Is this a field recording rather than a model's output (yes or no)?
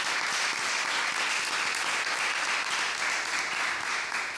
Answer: yes